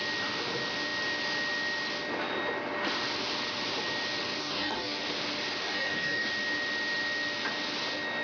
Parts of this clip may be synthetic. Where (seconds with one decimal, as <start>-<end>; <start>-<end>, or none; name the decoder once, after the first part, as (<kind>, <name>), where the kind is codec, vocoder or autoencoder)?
4.4-5.0 (codec, DAC); 5.6-6.3

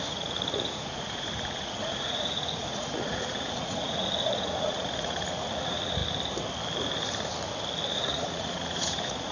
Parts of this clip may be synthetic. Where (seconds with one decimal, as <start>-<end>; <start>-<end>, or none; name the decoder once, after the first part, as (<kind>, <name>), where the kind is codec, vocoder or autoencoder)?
0.0-6.0 (vocoder, Vocos); 7.9-9.3

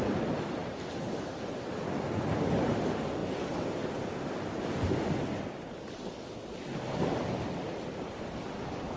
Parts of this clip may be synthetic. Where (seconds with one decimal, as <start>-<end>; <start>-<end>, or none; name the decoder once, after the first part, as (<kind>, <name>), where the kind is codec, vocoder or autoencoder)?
0.6-1.4 (vocoder, BigVGAN v2)

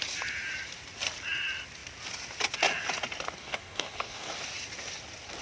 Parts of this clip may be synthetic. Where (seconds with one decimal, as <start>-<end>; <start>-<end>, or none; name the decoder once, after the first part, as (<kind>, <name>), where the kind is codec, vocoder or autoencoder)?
3.4-4.3 (codec, DAC)

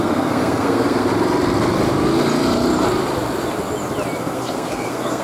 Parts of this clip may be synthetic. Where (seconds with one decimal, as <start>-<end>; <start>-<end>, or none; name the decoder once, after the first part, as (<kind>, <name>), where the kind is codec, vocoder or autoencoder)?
0.0-1.1 (codec, SNAC); 4.2-5.2

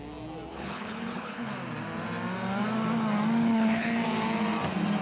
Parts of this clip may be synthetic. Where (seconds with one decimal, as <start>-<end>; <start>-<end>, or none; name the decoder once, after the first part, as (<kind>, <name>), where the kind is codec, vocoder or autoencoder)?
0.5-1.5 (codec, HILCodec); 3.4-3.9

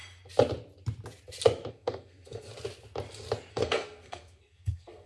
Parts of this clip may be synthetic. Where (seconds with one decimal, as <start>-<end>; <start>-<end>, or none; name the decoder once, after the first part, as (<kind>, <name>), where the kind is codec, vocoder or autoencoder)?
1.7-2.5 (codec, SNAC); 3.5-5.1